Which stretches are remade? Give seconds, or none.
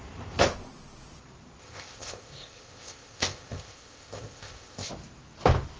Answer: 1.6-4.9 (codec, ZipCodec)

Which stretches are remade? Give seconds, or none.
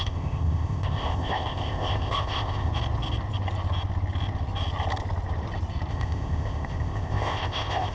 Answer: 0.0-2.7 (codec, ZipCodec); 5.9-7.9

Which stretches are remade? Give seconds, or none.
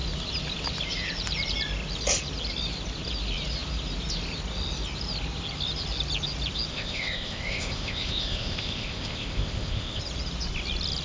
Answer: 6.7-10.0 (codec, ZipCodec)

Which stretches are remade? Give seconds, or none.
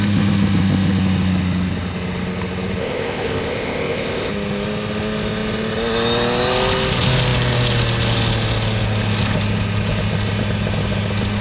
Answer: 2.8-4.3 (codec, ZipCodec)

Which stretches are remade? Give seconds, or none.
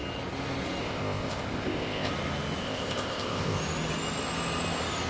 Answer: 0.8-2.1 (codec, ZipCodec); 2.6-3.6